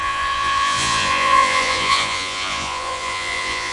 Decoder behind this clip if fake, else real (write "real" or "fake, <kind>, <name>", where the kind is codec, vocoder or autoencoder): fake, vocoder, Vocos